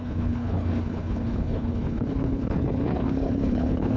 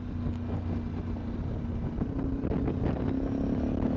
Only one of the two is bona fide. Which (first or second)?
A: second